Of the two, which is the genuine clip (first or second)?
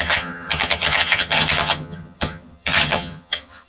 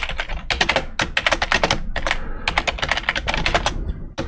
second